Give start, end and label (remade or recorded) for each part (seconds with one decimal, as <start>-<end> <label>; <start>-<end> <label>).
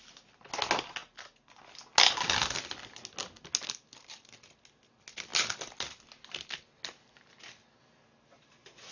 0.0-8.9 recorded